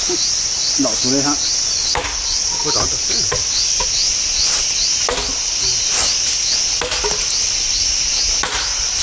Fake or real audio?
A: real